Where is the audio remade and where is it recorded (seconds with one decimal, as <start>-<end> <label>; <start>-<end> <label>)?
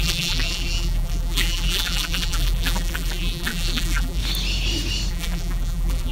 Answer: 0.0-4.2 remade; 4.2-5.1 recorded; 5.1-6.1 remade